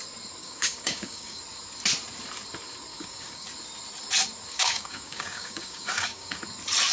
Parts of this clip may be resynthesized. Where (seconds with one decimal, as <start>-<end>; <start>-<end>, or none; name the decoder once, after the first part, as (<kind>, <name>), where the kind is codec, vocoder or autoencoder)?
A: 0.4-1.4 (codec, DAC); 2.9-3.5; 4.5-6.4